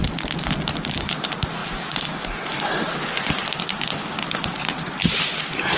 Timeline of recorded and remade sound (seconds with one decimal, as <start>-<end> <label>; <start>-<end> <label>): 0.0-5.8 recorded